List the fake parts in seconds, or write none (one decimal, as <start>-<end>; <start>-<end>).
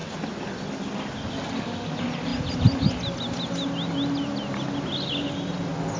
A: none